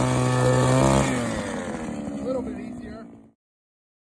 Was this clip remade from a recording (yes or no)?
no